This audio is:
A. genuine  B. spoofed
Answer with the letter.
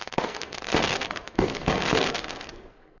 B